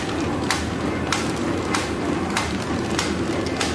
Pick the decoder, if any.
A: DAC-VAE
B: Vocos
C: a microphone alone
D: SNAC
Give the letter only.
C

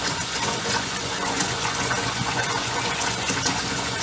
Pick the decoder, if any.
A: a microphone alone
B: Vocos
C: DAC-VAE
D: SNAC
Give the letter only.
B